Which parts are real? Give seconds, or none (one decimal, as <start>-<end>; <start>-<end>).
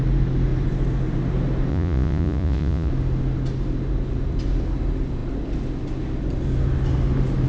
0.0-1.7; 2.9-7.5